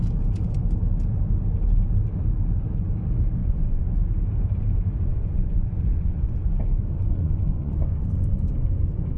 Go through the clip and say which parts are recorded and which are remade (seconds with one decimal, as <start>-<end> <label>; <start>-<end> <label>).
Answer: 0.0-3.4 recorded; 3.4-3.9 remade; 3.9-5.1 recorded; 5.1-9.2 remade